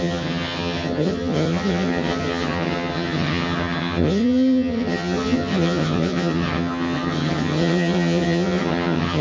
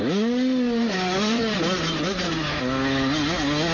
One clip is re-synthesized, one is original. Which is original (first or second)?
second